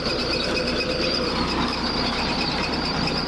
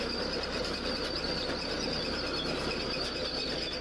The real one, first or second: second